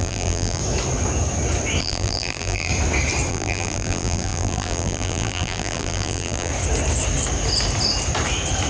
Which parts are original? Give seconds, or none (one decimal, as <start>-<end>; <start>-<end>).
0.6-1.8; 2.7-3.3; 6.5-8.7